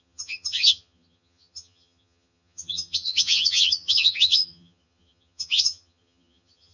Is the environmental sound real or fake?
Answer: fake